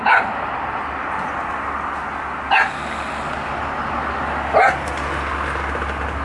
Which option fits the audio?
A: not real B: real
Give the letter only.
B